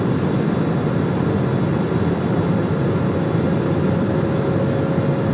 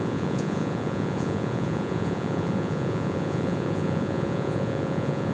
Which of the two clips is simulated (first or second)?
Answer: second